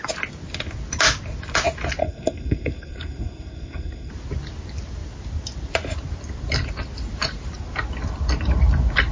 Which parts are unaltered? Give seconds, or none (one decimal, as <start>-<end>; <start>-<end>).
0.0-2.0; 4.1-9.1